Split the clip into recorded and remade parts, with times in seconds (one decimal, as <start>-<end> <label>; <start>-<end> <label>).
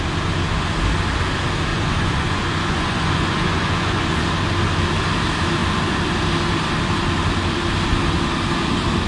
0.0-1.7 recorded; 1.7-4.2 remade; 4.2-9.1 recorded